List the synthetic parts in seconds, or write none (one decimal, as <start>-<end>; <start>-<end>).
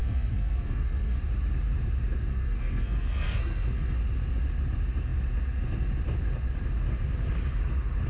0.0-1.2; 2.3-4.0